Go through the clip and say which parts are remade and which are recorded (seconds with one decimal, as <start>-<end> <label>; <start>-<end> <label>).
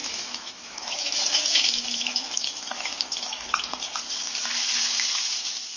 0.0-3.5 remade; 3.5-5.8 recorded